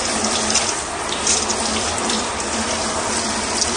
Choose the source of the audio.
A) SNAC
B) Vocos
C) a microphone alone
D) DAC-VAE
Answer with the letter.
C